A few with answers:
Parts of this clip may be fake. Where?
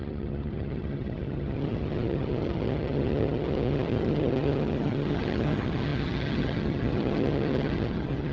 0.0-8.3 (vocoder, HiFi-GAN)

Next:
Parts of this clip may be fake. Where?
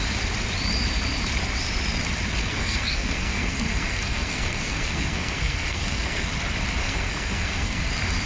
2.4-6.3 (codec, SNAC); 6.8-7.9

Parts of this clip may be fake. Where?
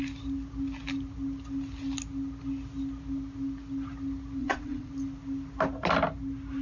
4.4-4.9 (vocoder, WaveNeXt)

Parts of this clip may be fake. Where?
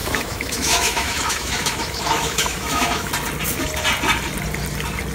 0.0-3.1 (autoencoder, DAC-VAE)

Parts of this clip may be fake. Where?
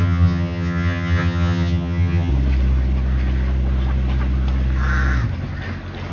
0.0-2.3 (vocoder, HiFi-GAN)